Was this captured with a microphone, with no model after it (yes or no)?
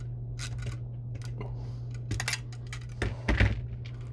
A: yes